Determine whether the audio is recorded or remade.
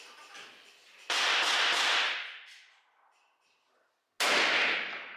recorded